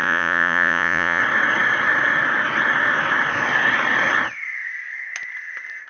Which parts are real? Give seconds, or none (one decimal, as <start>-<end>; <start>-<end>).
1.2-5.9